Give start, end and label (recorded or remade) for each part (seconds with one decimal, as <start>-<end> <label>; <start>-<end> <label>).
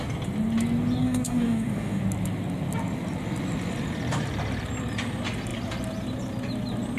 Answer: 0.0-1.0 recorded; 1.0-2.0 remade; 2.0-7.0 recorded